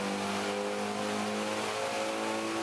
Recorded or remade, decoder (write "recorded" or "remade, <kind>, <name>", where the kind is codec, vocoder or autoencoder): recorded